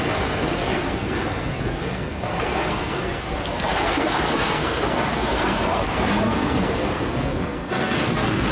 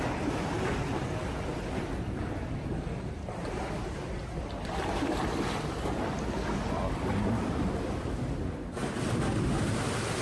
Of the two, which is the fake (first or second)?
first